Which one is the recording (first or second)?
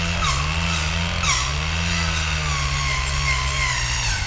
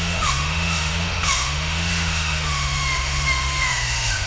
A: first